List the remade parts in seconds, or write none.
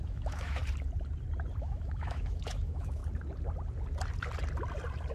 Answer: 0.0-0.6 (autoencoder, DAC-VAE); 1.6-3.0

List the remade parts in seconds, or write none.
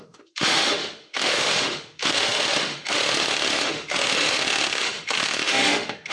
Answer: 0.0-6.1 (autoencoder, DAC-VAE)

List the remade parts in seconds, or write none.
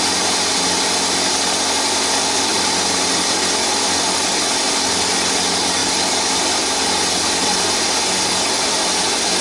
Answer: 2.5-3.0 (vocoder, BigVGAN v2); 5.8-6.4